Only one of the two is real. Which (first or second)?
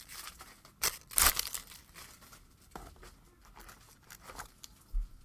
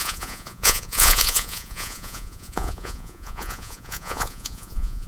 first